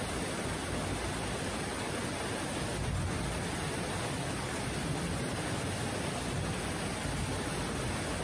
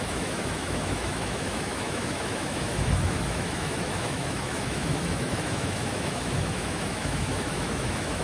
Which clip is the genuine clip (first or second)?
first